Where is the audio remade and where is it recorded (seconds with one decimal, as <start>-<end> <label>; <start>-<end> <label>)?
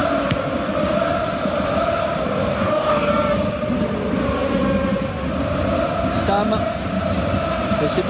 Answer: 0.0-2.5 recorded; 2.5-3.1 remade; 3.1-8.1 recorded